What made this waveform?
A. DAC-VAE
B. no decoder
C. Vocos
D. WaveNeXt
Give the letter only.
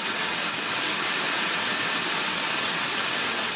D